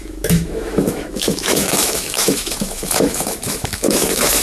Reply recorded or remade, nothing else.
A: remade